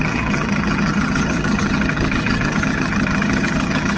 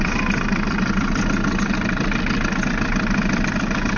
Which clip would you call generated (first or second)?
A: first